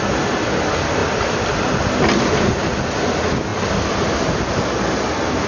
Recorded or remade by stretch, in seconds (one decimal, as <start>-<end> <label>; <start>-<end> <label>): 0.0-5.5 recorded